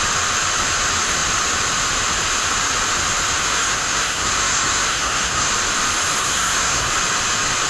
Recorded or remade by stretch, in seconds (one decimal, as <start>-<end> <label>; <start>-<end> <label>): 0.0-3.4 recorded; 3.4-5.5 remade; 5.5-6.2 recorded; 6.2-6.9 remade; 6.9-7.7 recorded